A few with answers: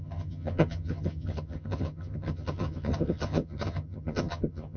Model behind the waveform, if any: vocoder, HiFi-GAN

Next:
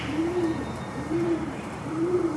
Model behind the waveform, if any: vocoder, BigVGAN v2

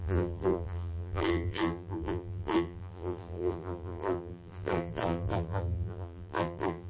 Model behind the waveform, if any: vocoder, BigVGAN v2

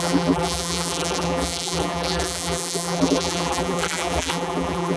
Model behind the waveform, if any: vocoder, BigVGAN v2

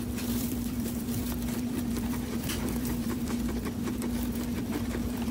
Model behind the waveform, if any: vocoder, BigVGAN v2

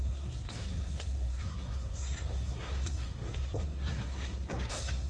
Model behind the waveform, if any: codec, SNAC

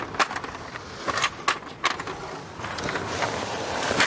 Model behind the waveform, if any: none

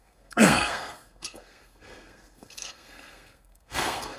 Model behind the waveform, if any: codec, SNAC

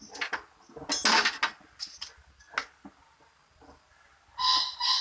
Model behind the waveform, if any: none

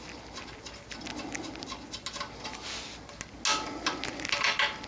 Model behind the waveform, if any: none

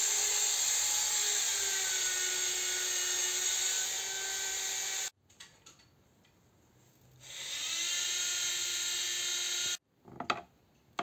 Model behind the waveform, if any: none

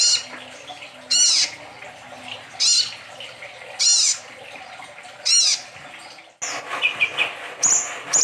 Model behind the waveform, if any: none